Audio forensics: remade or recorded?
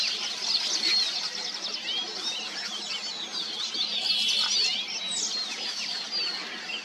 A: recorded